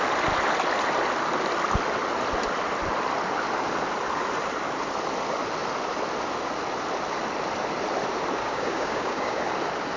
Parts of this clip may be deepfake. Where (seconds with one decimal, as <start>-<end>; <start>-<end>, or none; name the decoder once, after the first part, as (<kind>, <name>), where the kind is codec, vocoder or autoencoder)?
8.4-9.4 (codec, DAC)